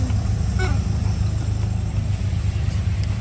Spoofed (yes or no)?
no